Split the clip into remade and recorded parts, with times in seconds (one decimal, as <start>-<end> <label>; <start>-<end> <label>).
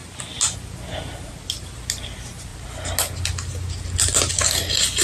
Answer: 0.0-5.0 recorded